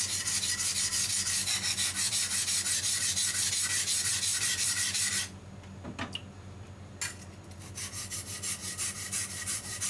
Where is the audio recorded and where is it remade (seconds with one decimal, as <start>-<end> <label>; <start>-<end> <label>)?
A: 0.0-4.3 recorded; 4.3-5.2 remade; 5.2-8.6 recorded; 8.6-9.9 remade